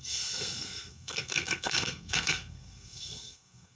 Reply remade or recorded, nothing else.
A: remade